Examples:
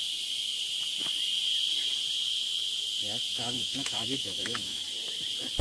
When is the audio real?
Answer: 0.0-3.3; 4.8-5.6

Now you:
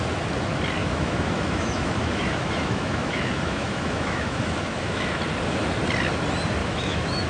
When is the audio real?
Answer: 0.0-0.8; 5.2-6.6

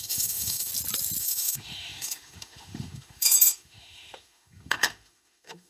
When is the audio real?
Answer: 0.7-1.2